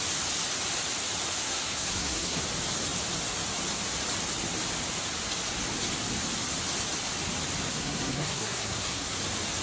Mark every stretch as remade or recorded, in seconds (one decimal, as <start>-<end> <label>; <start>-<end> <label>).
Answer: 0.0-1.4 recorded; 1.4-2.4 remade; 2.4-7.7 recorded; 7.7-9.2 remade; 9.2-9.6 recorded

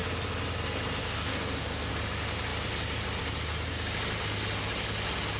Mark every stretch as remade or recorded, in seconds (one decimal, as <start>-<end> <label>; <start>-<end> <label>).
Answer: 0.0-1.0 recorded; 1.0-1.9 remade; 1.9-5.4 recorded

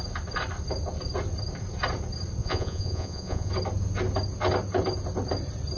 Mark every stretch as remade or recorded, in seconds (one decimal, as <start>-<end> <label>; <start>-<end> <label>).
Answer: 0.0-2.4 recorded; 2.4-3.5 remade; 3.5-5.8 recorded

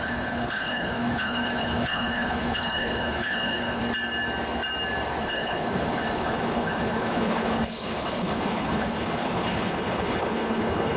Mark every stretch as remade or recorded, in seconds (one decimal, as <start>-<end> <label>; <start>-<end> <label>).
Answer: 0.0-3.8 remade; 3.8-5.2 recorded; 5.2-11.0 remade

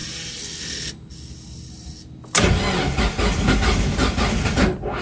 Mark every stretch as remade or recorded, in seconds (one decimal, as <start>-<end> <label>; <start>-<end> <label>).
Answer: 0.0-5.0 recorded

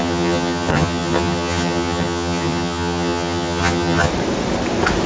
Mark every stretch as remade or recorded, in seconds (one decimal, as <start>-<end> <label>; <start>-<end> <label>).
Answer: 0.0-4.1 remade; 4.1-5.1 recorded

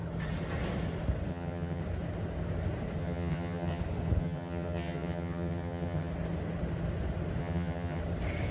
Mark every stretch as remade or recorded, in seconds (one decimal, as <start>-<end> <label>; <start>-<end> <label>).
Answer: 0.0-1.3 recorded; 1.3-1.8 remade; 1.8-3.0 recorded; 3.0-3.8 remade; 3.8-4.2 recorded; 4.2-6.1 remade; 6.1-7.4 recorded; 7.4-8.0 remade; 8.0-8.5 recorded